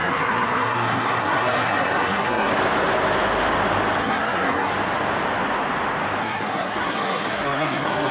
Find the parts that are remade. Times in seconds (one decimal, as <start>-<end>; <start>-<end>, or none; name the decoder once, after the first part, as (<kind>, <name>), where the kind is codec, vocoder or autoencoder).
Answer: 0.0-2.5 (codec, SNAC); 4.0-4.7; 6.2-8.1